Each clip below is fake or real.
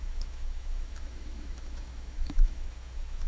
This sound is fake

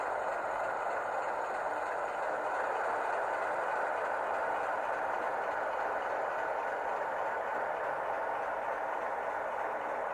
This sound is real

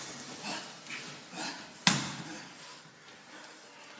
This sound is real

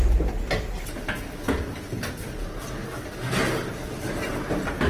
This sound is real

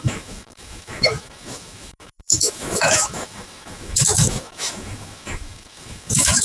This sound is fake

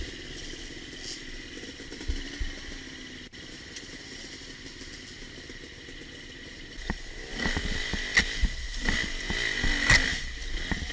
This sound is real